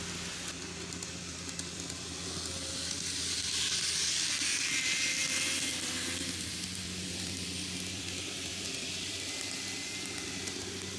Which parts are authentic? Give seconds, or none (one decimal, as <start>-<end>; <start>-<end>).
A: 5.2-5.7